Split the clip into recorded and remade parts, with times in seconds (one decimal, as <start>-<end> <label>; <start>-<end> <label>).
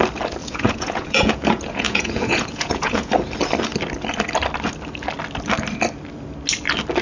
0.0-0.4 recorded; 0.4-3.1 remade; 3.1-7.0 recorded